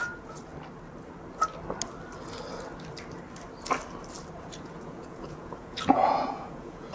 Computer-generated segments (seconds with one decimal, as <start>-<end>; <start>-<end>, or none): 0.0-0.5; 4.4-6.9